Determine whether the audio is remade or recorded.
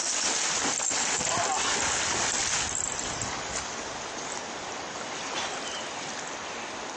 recorded